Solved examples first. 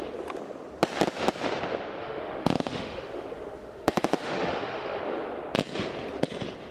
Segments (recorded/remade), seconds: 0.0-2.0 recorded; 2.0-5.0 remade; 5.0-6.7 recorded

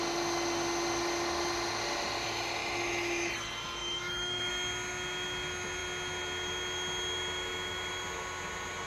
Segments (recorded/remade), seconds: 0.0-2.6 recorded; 2.6-3.3 remade; 3.3-3.8 recorded; 3.8-4.5 remade; 4.5-8.9 recorded

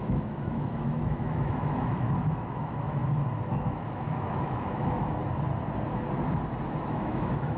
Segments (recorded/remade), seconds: 0.0-3.0 remade; 3.0-3.5 recorded; 3.5-5.2 remade; 5.2-6.8 recorded; 6.8-7.6 remade

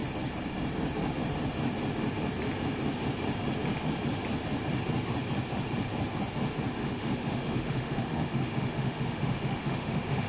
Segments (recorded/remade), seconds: 0.0-6.8 recorded; 6.8-10.3 remade